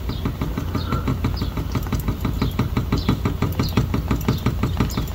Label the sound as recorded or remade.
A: recorded